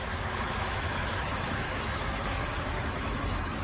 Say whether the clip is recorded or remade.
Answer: remade